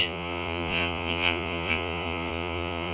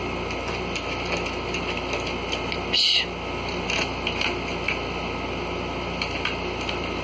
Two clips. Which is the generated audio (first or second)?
first